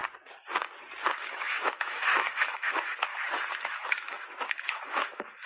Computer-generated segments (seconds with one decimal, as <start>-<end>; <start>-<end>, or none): 1.1-3.1; 3.6-5.5